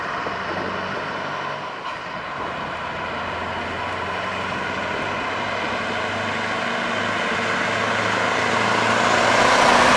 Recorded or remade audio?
recorded